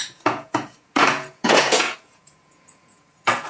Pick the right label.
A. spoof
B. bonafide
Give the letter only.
A